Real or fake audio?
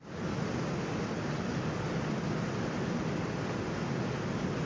real